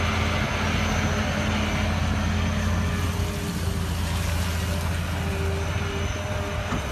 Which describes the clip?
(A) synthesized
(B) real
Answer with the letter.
B